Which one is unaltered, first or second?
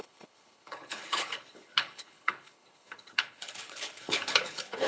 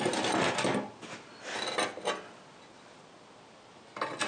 second